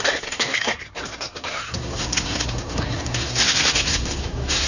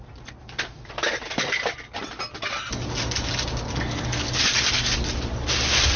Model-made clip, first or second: first